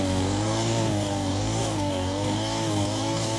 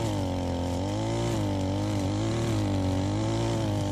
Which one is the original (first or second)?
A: second